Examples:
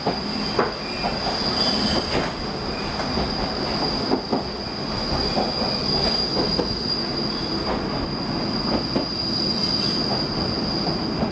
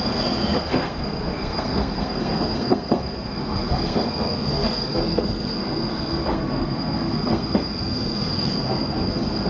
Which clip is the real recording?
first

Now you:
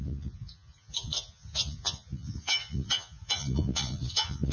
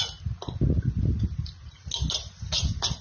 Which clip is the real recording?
second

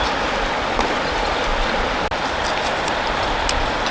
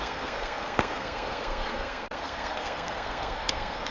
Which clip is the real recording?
first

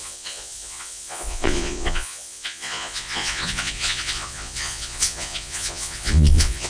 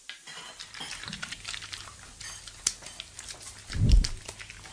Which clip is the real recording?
second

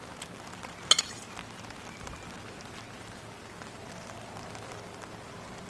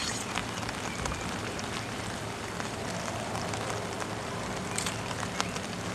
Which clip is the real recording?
first